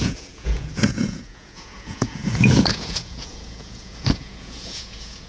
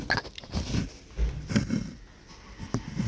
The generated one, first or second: first